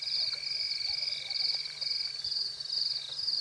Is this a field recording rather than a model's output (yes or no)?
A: yes